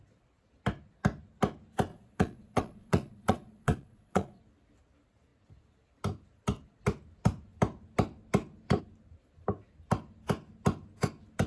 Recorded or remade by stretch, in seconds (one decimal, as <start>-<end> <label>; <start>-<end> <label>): 0.0-1.9 recorded; 1.9-4.4 remade; 4.4-11.5 recorded